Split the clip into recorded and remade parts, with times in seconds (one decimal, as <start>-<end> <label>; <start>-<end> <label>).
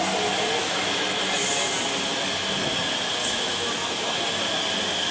0.0-0.6 recorded; 0.6-1.2 remade; 1.2-3.2 recorded; 3.2-4.2 remade; 4.2-5.1 recorded